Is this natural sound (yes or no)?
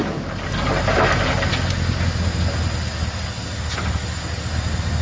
yes